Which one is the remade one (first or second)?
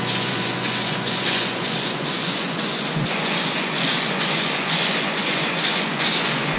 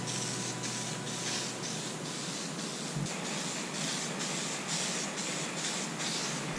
first